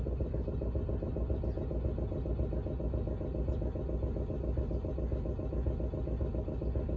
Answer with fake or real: real